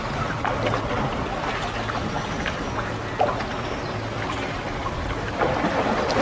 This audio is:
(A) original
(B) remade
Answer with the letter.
A